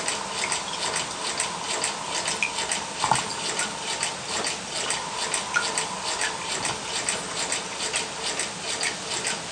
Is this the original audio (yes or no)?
yes